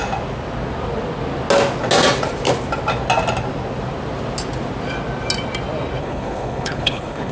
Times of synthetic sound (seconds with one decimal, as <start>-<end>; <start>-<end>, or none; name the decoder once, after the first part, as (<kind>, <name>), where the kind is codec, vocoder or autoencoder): 6.0-7.3 (codec, HILCodec)